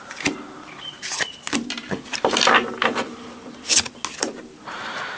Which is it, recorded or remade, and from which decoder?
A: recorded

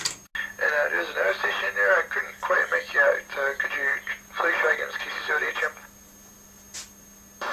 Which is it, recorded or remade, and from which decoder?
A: recorded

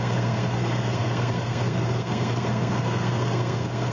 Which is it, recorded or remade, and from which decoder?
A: remade, codec, SNAC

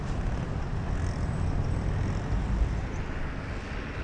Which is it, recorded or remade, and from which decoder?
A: recorded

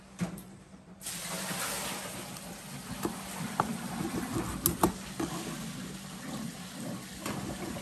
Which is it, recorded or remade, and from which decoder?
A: recorded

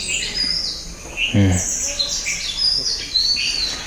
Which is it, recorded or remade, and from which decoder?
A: recorded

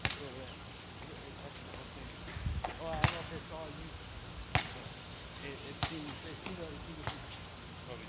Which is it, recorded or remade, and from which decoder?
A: recorded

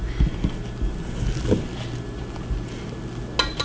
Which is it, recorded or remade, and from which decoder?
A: recorded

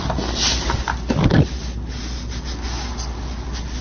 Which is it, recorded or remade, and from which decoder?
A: recorded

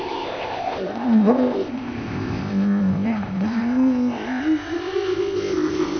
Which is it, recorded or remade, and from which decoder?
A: remade, codec, ZipCodec